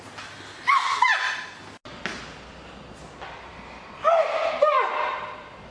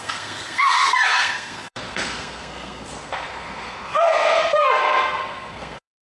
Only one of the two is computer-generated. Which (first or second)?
second